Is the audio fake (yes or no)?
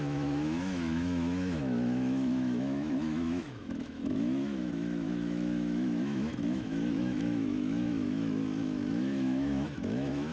yes